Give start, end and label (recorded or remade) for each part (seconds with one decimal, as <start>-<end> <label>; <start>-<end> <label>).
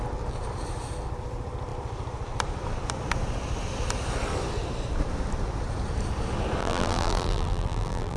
0.0-6.6 recorded; 6.6-8.2 remade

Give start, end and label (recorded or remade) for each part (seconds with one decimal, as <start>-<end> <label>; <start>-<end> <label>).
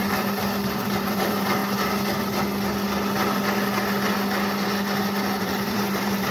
0.0-1.6 remade; 1.6-5.4 recorded; 5.4-6.3 remade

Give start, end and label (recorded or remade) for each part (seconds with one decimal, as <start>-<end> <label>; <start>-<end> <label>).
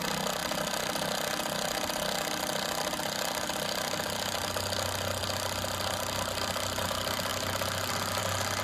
0.0-8.6 recorded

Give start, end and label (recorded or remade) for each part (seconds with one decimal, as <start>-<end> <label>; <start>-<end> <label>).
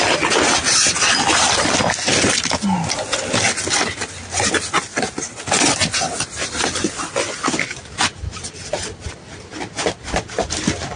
0.0-11.0 recorded